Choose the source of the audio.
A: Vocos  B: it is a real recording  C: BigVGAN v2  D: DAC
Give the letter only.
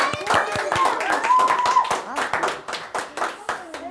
B